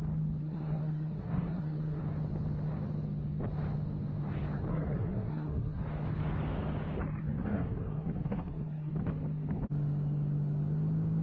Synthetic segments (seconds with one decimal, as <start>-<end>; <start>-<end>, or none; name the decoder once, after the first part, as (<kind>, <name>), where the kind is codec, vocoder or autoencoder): 0.4-2.0 (codec, SNAC); 4.7-5.8; 7.2-8.9